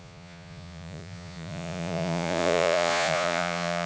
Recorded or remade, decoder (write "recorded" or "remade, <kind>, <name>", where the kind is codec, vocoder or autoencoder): remade, vocoder, Vocos